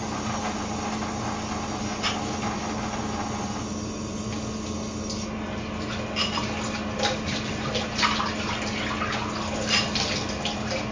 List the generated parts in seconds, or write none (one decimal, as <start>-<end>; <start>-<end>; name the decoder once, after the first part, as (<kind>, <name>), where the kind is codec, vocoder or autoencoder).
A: none